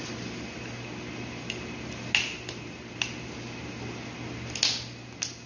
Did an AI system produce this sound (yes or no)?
no